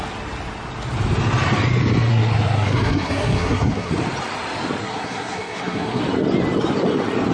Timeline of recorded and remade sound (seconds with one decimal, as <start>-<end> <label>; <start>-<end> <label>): 0.0-2.1 recorded; 2.1-3.9 remade; 3.9-4.8 recorded; 4.8-6.0 remade; 6.0-7.3 recorded